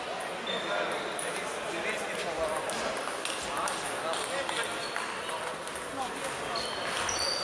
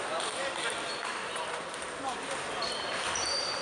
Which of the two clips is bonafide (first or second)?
first